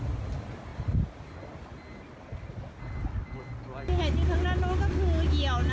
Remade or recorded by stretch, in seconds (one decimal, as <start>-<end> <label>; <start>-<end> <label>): 0.0-5.7 recorded